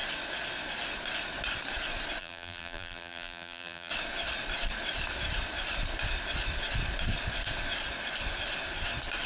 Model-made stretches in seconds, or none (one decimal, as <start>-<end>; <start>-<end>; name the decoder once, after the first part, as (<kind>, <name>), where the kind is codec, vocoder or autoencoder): 2.2-3.9 (vocoder, BigVGAN v2)